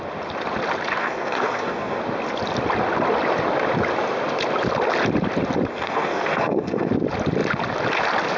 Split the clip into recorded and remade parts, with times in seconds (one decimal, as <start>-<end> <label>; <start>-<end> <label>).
0.0-1.0 recorded; 1.0-2.0 remade; 2.0-5.7 recorded; 5.7-6.9 remade; 6.9-8.4 recorded